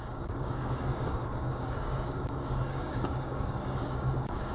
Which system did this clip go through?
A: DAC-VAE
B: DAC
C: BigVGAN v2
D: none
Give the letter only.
B